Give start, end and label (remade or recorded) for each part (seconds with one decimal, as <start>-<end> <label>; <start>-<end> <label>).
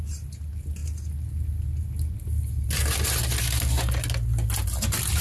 0.0-5.2 recorded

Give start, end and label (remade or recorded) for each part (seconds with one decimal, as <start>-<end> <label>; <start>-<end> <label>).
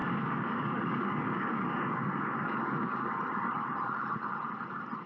0.0-3.1 remade; 3.1-5.1 recorded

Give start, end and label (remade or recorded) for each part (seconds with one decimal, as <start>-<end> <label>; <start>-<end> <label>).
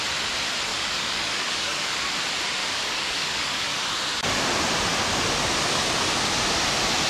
0.0-0.7 recorded; 0.7-1.9 remade; 1.9-2.6 recorded; 2.6-3.8 remade; 3.8-7.1 recorded